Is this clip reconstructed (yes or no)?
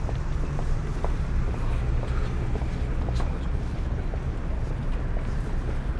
no